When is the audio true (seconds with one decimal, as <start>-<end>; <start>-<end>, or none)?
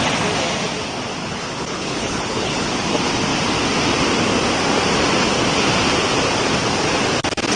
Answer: 0.0-1.2; 2.7-7.6